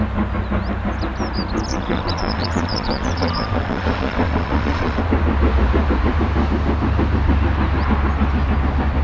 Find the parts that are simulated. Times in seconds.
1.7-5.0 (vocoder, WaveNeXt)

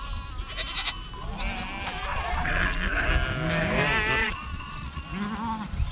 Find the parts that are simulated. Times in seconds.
2.1-2.6 (vocoder, Vocos); 4.2-5.0

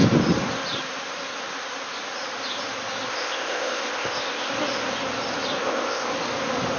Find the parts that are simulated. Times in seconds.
3.1-4.5 (codec, ZipCodec); 5.6-6.1

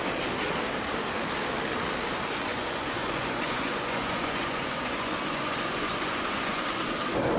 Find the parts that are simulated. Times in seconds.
2.5-6.9 (vocoder, Vocos)

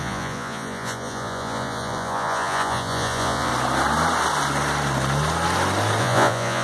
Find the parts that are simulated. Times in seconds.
0.0-3.5 (vocoder, Vocos); 6.0-6.6

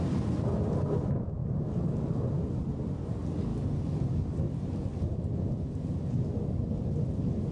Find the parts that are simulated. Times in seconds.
none

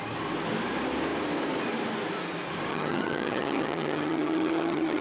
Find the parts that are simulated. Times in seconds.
2.7-5.0 (vocoder, HiFi-GAN)

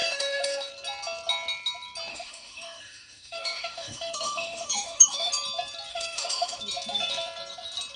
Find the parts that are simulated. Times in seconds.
0.0-0.7 (autoencoder, DAC-VAE); 2.1-5.3; 5.9-6.6